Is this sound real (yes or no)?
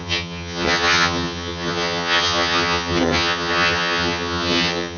no